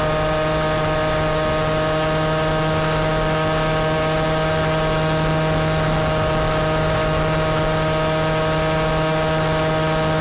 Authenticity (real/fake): real